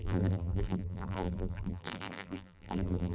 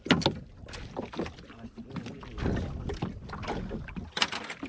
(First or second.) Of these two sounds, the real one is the second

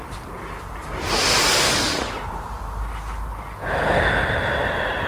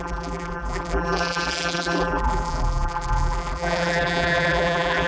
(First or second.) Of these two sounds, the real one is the first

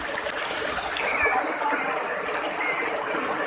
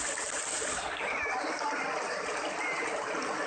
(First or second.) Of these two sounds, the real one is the second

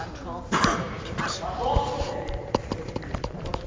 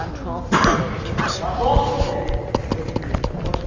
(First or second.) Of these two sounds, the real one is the second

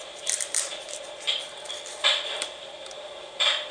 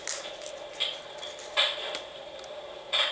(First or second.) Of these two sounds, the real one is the second